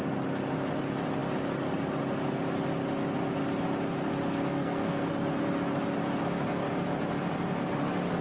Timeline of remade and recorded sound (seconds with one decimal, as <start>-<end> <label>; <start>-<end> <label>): 0.0-4.5 recorded; 4.5-5.1 remade; 5.1-8.2 recorded